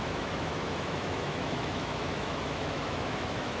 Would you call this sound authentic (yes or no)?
no